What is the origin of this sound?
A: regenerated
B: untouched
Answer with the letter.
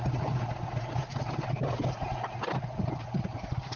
B